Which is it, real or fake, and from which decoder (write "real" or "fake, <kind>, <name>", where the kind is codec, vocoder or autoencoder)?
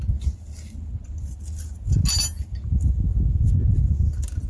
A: real